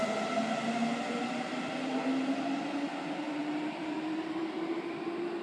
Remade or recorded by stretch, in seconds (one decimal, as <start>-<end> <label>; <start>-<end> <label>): 0.0-5.4 recorded